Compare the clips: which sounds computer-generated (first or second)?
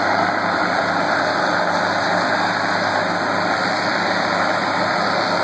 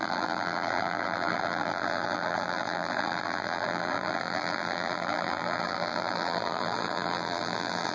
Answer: second